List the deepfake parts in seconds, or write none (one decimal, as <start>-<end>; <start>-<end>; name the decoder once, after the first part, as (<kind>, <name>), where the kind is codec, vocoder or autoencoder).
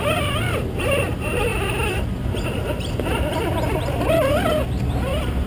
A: 0.0-5.5 (vocoder, BigVGAN v2)